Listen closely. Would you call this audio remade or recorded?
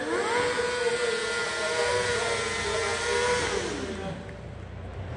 recorded